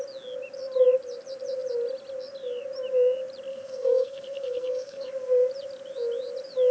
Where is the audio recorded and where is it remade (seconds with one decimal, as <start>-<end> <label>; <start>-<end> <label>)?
0.0-3.5 recorded; 3.5-5.1 remade; 5.1-6.7 recorded